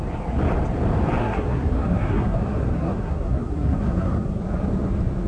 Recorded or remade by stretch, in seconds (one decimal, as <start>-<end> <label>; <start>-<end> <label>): 0.0-1.2 recorded; 1.2-4.4 remade; 4.4-5.3 recorded

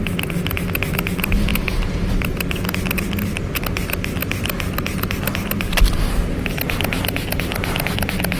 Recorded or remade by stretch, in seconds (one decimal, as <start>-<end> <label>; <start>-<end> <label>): 0.0-8.4 recorded

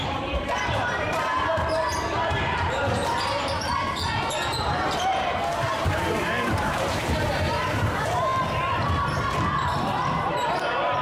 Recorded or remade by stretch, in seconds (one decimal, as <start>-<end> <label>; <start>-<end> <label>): 0.0-8.3 remade; 8.3-9.5 recorded; 9.5-11.0 remade